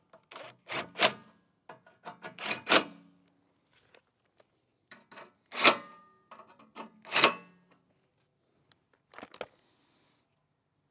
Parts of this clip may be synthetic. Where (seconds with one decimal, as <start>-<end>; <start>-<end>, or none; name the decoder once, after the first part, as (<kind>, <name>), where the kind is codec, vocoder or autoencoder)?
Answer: none